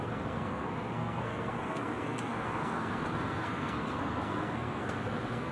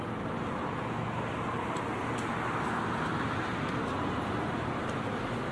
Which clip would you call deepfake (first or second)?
first